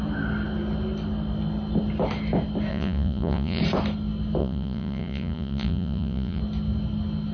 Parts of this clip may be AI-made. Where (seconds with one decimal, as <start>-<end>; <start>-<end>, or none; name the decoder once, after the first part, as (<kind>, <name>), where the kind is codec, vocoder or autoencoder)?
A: 2.7-3.6 (vocoder, Vocos); 4.4-6.4